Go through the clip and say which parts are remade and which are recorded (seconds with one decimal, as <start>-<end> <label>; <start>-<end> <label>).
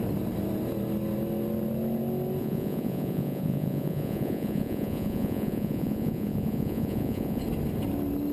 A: 0.0-2.4 recorded; 2.4-7.4 remade; 7.4-8.3 recorded